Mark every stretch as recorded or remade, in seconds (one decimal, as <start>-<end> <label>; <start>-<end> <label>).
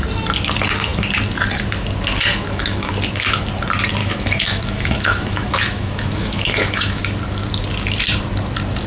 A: 0.0-2.3 recorded; 2.3-2.9 remade; 2.9-4.0 recorded; 4.0-7.0 remade; 7.0-8.9 recorded